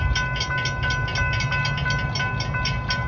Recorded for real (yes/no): yes